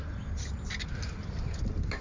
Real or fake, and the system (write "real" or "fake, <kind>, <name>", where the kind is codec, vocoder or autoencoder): real